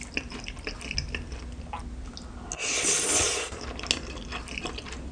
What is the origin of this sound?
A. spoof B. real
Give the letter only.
B